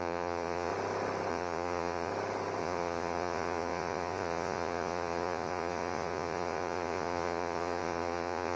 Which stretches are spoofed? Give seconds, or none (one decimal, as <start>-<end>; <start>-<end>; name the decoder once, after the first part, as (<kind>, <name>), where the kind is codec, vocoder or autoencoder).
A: 0.0-0.7 (vocoder, Vocos); 1.3-2.1; 2.6-8.6